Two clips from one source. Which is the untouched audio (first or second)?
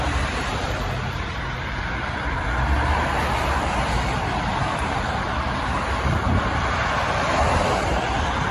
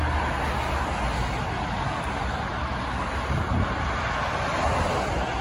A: second